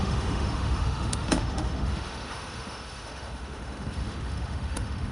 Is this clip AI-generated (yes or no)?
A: yes